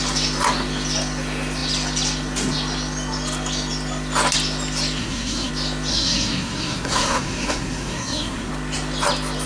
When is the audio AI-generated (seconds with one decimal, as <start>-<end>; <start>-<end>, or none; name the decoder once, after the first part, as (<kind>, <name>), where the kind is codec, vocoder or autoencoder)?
5.0-5.5 (codec, SNAC); 5.9-8.5